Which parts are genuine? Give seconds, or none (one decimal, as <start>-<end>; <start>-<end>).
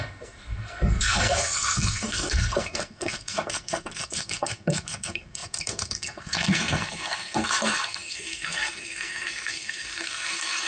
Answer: none